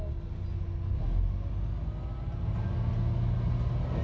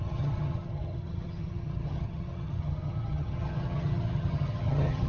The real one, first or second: first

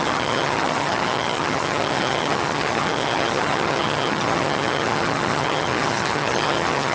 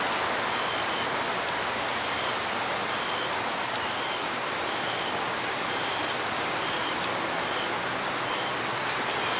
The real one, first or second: second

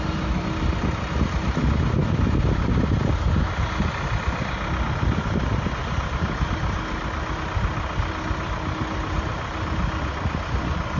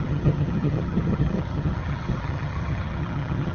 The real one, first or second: first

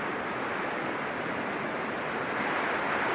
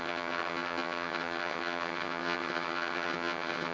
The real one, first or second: first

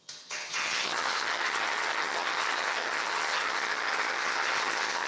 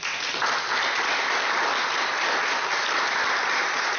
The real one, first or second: second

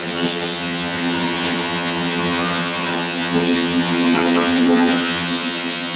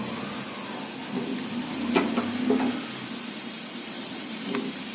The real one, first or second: second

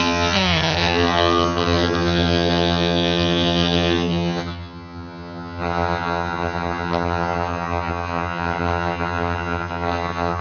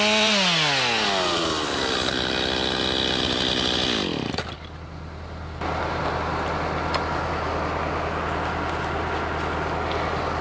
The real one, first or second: second